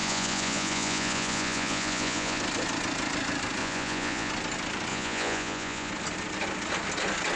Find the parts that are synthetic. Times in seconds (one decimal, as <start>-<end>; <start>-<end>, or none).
0.0-2.4; 3.6-4.3; 4.9-5.9